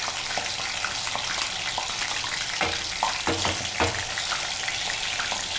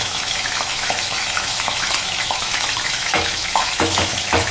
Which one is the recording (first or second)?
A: first